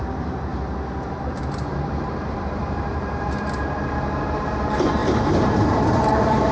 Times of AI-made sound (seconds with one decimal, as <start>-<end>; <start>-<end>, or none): 0.0-0.5; 1.1-6.5